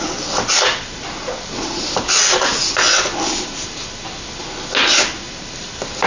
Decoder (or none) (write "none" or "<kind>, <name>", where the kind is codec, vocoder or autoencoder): none